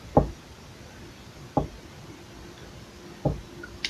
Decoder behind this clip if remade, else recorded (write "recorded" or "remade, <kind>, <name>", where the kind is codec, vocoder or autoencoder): recorded